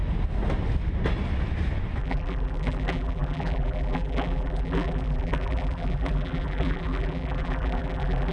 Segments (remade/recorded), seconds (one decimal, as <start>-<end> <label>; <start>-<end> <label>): 0.0-2.0 recorded; 2.0-8.3 remade